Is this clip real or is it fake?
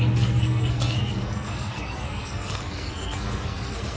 fake